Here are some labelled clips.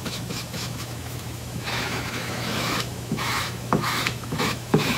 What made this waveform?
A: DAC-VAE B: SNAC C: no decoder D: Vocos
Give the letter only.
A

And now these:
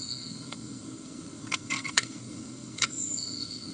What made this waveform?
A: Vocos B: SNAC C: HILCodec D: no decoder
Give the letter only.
B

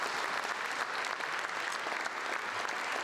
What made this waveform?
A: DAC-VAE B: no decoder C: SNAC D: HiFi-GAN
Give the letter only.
B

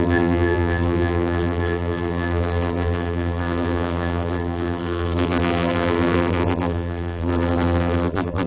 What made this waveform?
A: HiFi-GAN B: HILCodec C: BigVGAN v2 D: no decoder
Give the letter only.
C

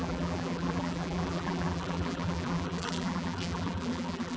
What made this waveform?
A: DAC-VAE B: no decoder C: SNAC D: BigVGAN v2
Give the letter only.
D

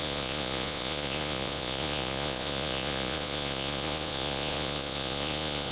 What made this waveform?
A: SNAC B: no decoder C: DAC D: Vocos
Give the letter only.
D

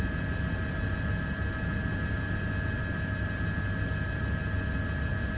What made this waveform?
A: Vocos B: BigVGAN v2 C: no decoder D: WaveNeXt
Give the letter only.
C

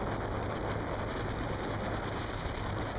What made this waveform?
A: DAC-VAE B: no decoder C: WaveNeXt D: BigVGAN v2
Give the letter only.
B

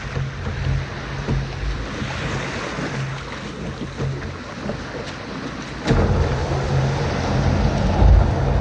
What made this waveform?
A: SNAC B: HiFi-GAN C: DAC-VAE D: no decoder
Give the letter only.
D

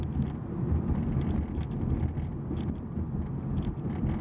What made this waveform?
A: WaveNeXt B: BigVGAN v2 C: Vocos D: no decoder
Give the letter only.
D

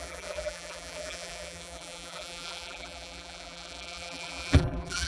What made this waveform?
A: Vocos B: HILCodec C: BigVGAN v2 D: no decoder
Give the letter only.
C